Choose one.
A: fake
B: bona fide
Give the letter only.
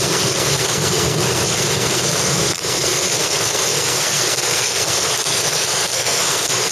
A